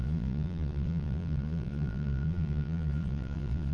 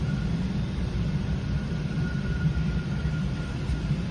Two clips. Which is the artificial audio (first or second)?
first